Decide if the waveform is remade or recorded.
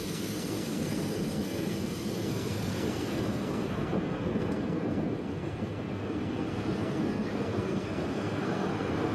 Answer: remade